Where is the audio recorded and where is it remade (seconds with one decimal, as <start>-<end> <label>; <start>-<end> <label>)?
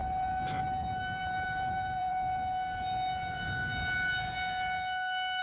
0.0-0.6 recorded; 0.6-2.1 remade; 2.1-5.4 recorded